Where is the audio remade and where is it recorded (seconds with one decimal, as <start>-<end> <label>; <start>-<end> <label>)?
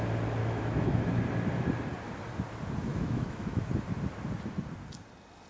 0.0-0.4 recorded; 0.4-1.0 remade; 1.0-2.9 recorded; 2.9-3.7 remade; 3.7-5.5 recorded